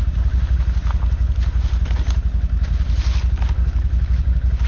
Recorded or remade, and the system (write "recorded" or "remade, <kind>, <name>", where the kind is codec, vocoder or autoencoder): recorded